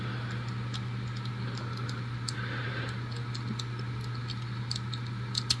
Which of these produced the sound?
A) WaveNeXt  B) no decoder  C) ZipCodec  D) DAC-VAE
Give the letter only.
B